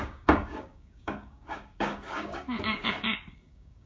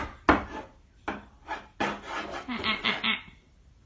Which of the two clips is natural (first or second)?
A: second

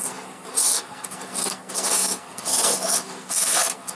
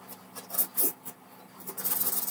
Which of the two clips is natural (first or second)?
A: second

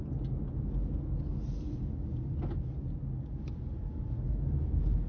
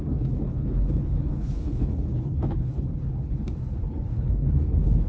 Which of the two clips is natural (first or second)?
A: first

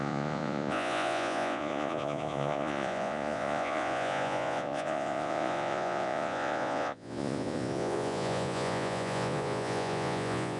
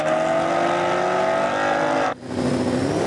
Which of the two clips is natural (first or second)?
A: second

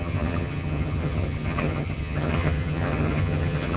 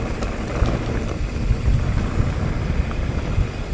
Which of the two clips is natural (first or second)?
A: second